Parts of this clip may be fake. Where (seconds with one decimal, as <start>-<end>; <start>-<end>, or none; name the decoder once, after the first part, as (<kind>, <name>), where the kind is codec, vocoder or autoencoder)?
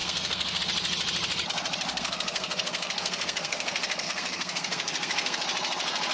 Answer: 0.0-0.6 (codec, SNAC); 1.9-5.4